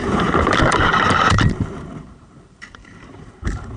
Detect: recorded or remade remade